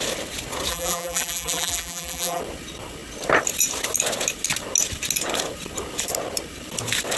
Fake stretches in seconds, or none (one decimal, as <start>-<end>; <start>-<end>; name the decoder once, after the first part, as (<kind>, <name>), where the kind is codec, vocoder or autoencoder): 0.7-2.4 (vocoder, BigVGAN v2)